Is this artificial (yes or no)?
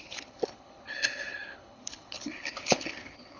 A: yes